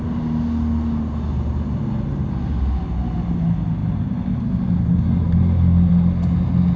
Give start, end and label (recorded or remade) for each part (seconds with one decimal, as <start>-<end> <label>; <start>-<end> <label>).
0.0-6.8 recorded